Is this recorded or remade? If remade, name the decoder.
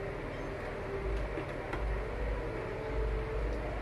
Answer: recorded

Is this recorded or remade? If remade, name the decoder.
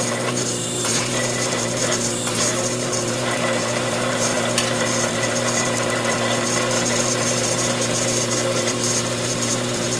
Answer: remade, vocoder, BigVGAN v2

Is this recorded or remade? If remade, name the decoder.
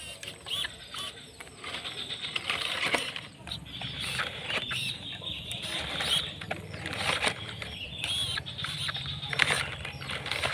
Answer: remade, vocoder, BigVGAN v2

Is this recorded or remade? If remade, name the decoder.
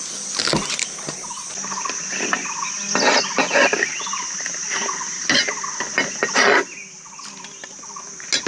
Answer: recorded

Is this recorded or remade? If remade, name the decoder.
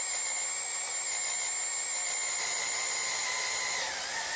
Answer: recorded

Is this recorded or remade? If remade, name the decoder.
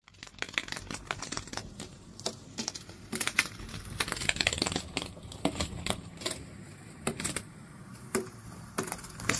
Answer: remade, vocoder, BigVGAN v2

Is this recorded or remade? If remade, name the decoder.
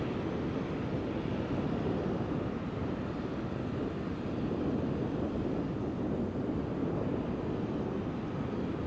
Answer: recorded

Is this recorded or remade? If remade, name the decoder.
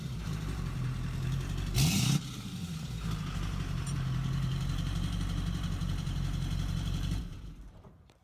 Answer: remade, vocoder, BigVGAN v2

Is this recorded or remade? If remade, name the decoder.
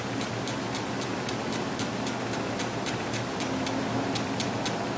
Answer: recorded